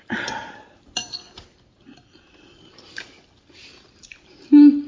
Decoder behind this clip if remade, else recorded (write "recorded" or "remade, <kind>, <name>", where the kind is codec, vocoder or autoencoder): recorded